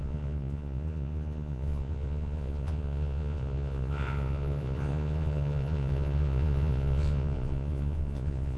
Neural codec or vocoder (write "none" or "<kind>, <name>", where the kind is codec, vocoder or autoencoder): vocoder, Vocos